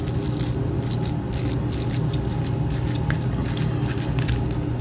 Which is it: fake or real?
real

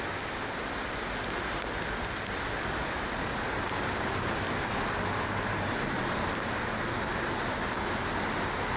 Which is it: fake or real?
real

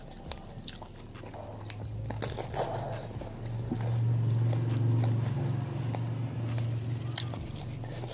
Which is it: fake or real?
real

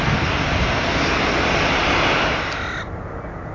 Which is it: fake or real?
real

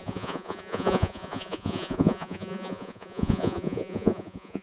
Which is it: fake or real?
fake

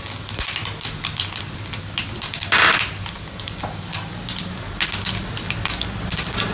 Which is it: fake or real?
real